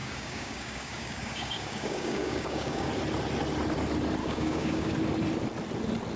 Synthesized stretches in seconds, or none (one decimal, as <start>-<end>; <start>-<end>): 0.0-2.9; 4.2-4.9